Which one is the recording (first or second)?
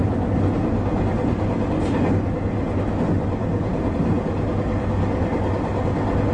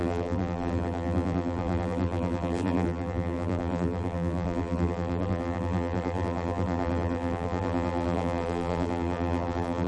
first